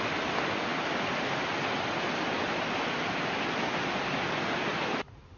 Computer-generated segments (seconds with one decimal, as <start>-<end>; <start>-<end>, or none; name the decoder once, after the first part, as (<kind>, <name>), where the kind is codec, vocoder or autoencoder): none